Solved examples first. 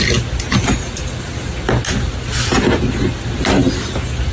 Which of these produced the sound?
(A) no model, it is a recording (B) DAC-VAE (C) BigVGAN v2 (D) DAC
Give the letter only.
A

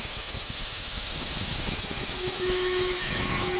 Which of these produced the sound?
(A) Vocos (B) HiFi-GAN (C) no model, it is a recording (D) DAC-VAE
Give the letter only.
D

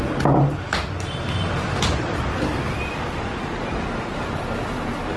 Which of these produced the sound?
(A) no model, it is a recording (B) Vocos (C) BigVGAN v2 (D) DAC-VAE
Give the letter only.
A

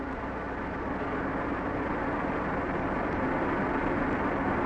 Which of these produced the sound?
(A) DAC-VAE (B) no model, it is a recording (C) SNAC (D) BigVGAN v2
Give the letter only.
B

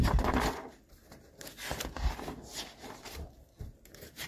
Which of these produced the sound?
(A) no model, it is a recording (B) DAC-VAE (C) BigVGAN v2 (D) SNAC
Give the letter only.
A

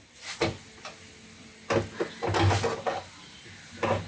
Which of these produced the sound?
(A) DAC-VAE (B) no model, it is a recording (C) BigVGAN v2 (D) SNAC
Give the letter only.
B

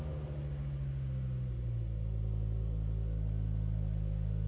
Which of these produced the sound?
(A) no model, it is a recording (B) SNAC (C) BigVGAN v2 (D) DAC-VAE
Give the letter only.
A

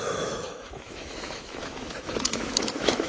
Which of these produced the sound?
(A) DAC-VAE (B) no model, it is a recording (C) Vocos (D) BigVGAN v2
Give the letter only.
A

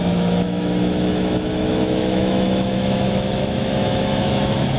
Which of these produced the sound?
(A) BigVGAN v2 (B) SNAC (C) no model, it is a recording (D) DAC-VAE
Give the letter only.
D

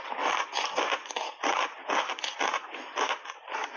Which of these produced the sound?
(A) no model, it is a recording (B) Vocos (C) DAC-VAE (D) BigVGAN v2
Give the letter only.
A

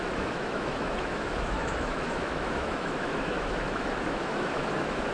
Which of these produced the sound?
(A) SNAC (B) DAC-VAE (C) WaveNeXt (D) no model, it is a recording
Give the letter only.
B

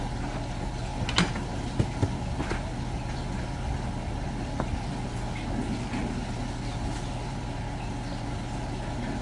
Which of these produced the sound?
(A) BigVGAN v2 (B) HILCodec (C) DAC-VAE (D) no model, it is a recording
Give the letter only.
D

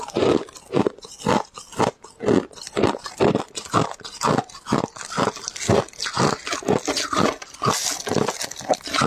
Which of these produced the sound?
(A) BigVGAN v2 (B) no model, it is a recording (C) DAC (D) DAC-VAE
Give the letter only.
B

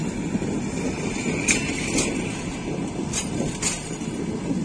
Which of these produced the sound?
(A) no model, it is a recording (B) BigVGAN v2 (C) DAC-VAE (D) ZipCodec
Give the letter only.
A